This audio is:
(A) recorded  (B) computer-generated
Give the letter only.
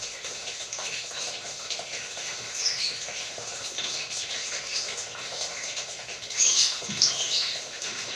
B